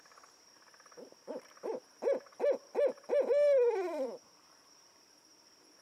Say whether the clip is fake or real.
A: fake